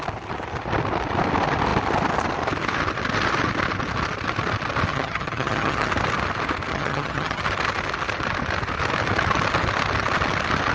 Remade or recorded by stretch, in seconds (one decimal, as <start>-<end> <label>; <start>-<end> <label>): 0.0-4.9 recorded; 4.9-5.9 remade; 5.9-6.7 recorded; 6.7-7.4 remade; 7.4-10.7 recorded